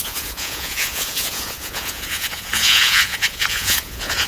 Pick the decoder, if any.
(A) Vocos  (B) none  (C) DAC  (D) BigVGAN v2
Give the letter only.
A